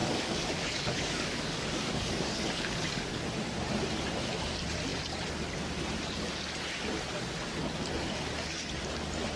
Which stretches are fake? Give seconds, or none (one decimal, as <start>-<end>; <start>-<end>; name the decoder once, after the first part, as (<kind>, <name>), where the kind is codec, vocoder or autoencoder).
0.0-3.2 (codec, DAC)